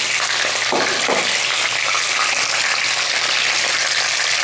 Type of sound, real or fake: real